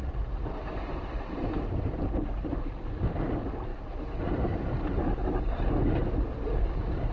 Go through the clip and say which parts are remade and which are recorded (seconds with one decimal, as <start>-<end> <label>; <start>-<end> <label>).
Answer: 0.0-7.1 recorded